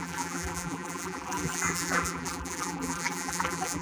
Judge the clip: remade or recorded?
remade